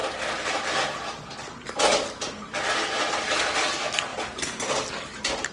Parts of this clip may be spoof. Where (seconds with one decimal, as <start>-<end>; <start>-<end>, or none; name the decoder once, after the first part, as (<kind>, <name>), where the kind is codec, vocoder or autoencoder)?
none